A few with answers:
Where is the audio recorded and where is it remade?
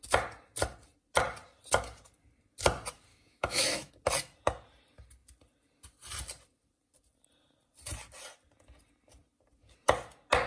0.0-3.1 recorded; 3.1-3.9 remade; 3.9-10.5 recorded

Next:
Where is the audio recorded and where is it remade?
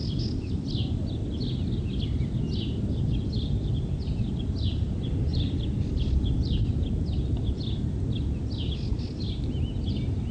0.0-10.3 recorded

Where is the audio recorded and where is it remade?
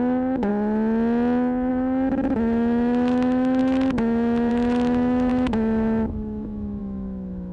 0.0-0.5 remade; 0.5-1.7 recorded; 1.7-7.5 remade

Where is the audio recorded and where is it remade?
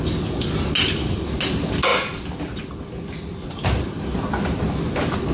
0.0-5.3 recorded